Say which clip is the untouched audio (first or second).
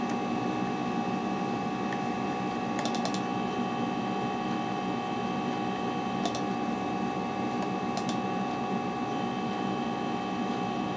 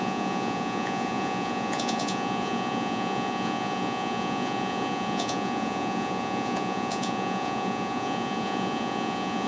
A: first